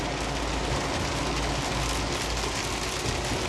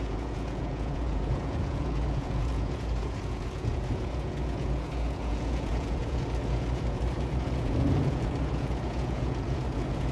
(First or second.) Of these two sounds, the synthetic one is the second